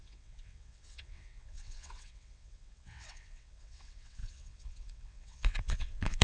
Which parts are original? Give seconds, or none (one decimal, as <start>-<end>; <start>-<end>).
none